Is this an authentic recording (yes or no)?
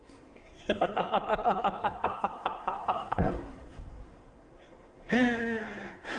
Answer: no